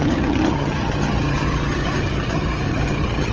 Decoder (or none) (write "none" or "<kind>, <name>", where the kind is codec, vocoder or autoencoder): vocoder, HiFi-GAN